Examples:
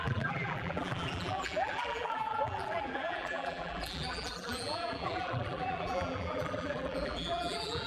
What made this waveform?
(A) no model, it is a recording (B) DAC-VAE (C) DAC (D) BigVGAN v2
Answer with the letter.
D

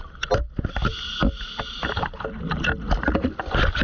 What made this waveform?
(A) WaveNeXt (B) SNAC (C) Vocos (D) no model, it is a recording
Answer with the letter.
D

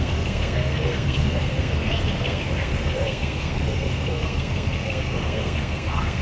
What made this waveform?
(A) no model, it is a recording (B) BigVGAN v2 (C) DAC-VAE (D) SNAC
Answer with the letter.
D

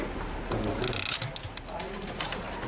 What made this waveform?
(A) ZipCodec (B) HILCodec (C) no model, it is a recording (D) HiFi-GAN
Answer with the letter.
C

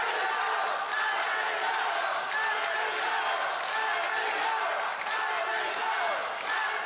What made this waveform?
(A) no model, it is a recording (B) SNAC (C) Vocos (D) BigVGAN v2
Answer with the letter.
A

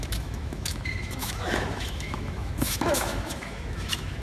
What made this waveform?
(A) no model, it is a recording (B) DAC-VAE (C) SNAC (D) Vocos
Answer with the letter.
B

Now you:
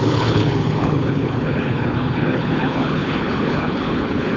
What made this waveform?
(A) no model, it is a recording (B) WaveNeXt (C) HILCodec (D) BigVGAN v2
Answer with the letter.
C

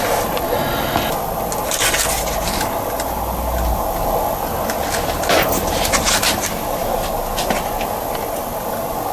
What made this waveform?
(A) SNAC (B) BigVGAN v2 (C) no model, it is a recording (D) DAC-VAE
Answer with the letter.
C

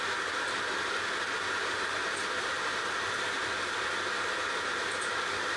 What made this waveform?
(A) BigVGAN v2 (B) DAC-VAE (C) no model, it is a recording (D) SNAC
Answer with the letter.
C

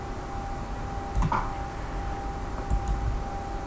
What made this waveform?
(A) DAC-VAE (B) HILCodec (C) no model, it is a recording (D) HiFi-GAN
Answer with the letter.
C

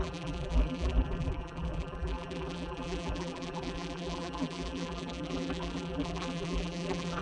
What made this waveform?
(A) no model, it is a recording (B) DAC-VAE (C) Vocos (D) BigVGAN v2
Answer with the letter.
D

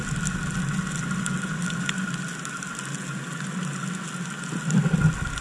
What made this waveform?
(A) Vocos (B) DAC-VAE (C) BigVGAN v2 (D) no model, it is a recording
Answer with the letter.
D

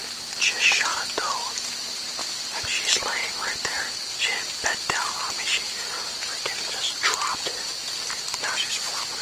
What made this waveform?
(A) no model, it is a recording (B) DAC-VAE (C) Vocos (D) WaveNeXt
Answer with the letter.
A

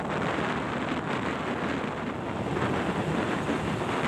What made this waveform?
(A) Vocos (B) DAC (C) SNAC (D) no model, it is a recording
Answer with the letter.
D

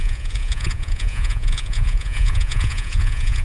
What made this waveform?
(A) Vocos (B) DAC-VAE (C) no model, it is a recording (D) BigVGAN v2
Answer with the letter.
A